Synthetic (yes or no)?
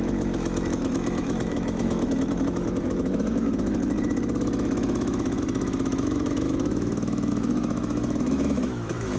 yes